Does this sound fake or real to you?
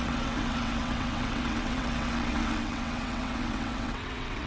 fake